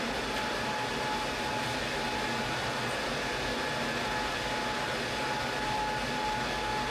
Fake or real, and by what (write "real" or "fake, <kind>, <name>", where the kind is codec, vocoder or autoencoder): real